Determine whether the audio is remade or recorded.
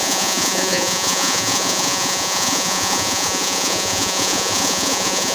remade